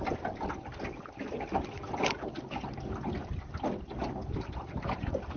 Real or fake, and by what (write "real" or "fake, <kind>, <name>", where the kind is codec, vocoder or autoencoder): real